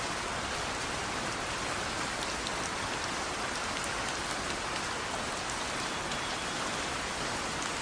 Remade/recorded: recorded